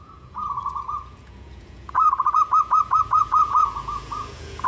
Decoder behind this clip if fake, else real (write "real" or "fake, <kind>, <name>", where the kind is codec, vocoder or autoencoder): fake, vocoder, Vocos